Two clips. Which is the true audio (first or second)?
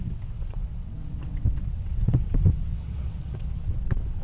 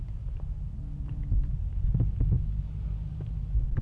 second